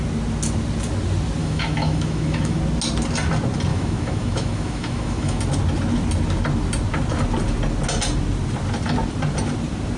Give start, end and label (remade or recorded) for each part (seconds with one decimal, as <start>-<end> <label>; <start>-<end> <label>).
0.0-1.4 recorded; 1.4-2.6 remade; 2.6-3.7 recorded; 3.7-5.4 remade; 5.4-10.0 recorded